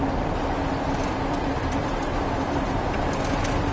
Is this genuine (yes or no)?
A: yes